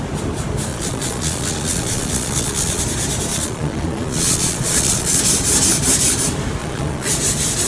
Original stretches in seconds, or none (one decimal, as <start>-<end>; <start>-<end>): 0.0-0.7; 2.8-3.3; 5.2-6.6; 7.1-7.7